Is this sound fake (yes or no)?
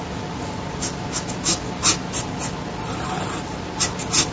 no